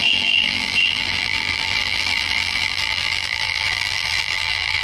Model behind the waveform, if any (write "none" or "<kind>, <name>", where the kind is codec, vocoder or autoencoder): vocoder, BigVGAN v2